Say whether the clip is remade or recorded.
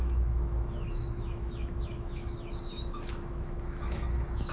remade